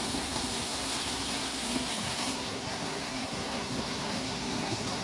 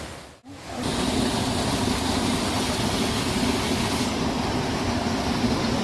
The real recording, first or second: second